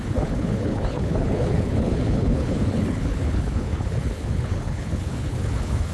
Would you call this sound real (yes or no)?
no